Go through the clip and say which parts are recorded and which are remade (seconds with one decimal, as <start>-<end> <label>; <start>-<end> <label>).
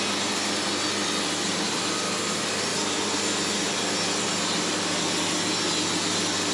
0.0-6.5 recorded